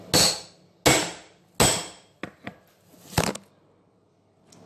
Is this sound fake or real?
real